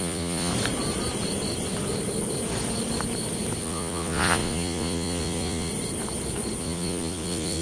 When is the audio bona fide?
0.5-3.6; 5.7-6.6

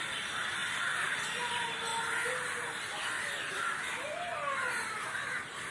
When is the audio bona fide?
0.0-5.7